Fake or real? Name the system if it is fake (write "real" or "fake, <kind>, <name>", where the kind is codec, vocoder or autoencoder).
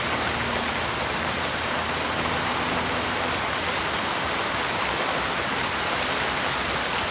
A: real